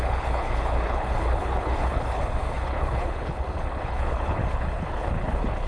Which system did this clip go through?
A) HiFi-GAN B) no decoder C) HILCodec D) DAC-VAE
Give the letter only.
C